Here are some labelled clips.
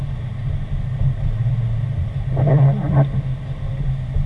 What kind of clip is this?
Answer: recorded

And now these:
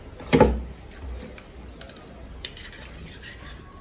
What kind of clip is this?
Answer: recorded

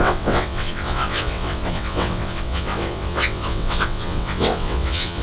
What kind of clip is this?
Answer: remade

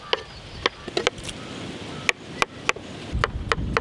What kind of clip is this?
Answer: recorded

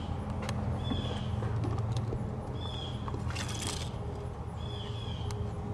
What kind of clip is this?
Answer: recorded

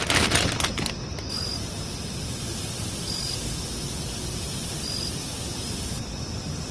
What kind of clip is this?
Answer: recorded